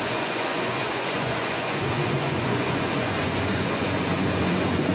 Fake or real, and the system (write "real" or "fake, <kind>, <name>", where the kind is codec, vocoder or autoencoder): fake, vocoder, Vocos